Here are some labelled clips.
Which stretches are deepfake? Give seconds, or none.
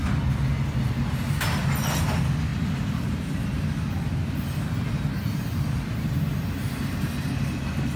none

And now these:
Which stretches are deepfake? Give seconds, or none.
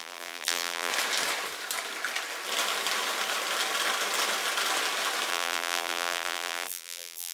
0.0-0.9 (vocoder, BigVGAN v2); 5.3-7.3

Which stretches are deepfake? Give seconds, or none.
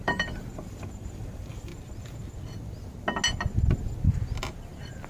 0.0-1.7 (vocoder, BigVGAN v2)